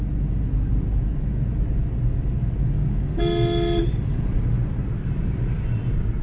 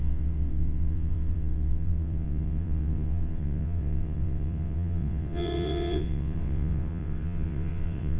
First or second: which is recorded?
first